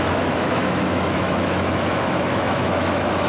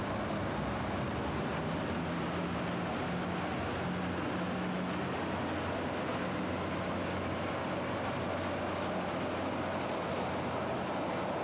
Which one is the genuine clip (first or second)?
second